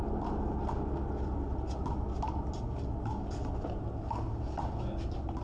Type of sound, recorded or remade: recorded